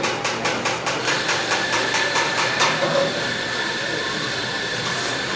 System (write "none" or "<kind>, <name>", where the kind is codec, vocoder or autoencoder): vocoder, BigVGAN v2